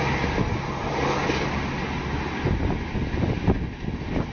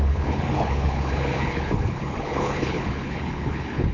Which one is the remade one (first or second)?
second